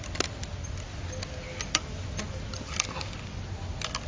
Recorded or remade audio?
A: recorded